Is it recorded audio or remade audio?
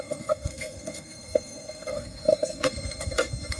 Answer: remade